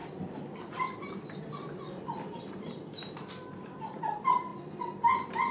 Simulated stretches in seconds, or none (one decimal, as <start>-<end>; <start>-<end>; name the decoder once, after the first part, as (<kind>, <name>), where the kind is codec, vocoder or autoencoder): 0.0-4.5 (vocoder, BigVGAN v2)